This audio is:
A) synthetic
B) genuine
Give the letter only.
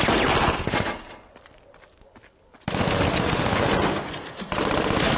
A